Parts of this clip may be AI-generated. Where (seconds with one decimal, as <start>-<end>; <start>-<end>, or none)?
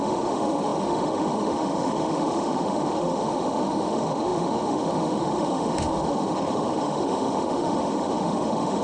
0.0-8.8